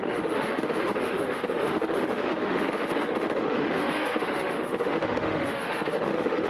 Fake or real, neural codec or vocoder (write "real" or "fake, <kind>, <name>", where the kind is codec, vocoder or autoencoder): fake, autoencoder, DAC-VAE